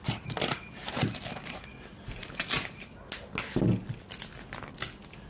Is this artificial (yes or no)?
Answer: no